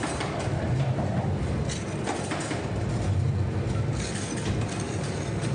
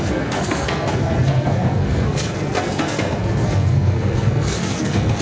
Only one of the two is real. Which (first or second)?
first